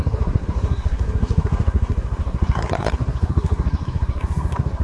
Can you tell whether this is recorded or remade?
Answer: remade